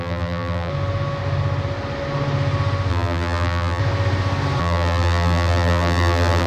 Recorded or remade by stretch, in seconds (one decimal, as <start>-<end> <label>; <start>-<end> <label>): 0.0-0.7 remade; 0.7-2.9 recorded; 2.9-3.8 remade; 3.8-4.6 recorded; 4.6-6.5 remade